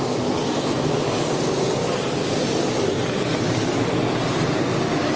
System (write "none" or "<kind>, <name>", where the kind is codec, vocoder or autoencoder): none